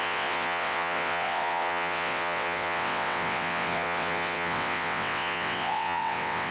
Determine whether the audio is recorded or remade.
remade